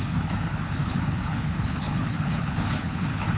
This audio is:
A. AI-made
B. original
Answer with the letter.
A